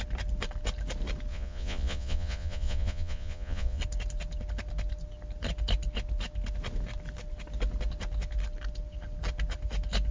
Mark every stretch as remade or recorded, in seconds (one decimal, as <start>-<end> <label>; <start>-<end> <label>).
0.0-1.3 recorded; 1.3-3.8 remade; 3.8-10.1 recorded